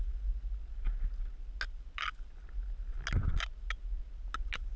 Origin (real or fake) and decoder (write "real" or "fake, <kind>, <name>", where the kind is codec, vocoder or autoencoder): real